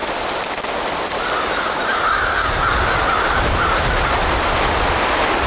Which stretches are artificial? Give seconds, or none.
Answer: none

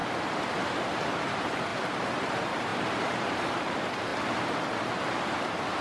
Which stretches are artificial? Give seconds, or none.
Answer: 0.8-1.7 (vocoder, BigVGAN v2); 2.3-4.1

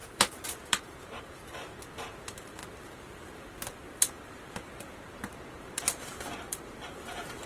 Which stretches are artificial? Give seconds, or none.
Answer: 0.0-7.5 (vocoder, BigVGAN v2)

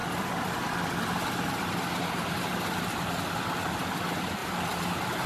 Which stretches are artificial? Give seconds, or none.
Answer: 4.4-5.3 (vocoder, BigVGAN v2)

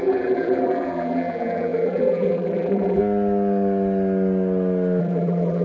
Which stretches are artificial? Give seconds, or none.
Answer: 0.0-3.0 (vocoder, BigVGAN v2); 5.0-5.6